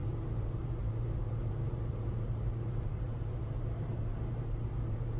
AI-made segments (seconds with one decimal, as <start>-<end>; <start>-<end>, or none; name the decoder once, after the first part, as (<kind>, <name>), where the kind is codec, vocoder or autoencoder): 0.0-5.2 (vocoder, BigVGAN v2)